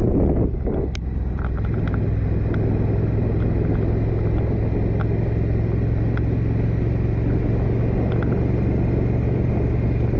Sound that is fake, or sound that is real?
real